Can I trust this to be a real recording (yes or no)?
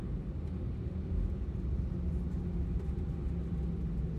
yes